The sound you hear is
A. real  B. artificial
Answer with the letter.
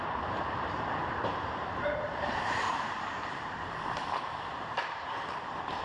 B